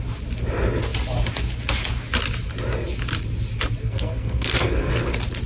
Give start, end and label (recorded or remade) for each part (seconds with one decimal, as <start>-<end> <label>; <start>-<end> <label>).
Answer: 0.0-3.8 recorded; 3.8-4.9 remade; 4.9-5.5 recorded